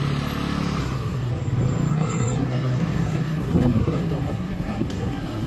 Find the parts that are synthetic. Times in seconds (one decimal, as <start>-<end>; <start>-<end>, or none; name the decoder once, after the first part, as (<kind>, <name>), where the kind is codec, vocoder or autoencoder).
0.8-1.3 (codec, SNAC); 1.9-5.5